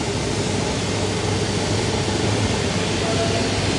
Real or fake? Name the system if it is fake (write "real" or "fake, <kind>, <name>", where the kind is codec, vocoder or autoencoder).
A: real